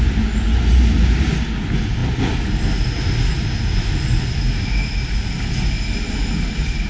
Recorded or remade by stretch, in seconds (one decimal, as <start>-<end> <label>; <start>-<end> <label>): 0.0-6.9 recorded